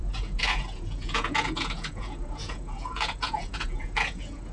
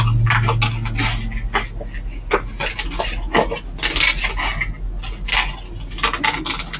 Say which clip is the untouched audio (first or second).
second